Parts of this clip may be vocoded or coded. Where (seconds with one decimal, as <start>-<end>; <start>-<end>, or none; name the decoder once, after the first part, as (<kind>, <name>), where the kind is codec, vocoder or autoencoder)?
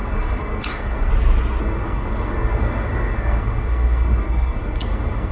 0.0-1.1 (codec, SNAC); 1.6-5.3